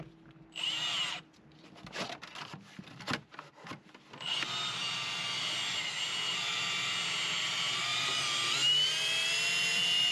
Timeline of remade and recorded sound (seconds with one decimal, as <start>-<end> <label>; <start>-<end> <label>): 0.0-10.1 recorded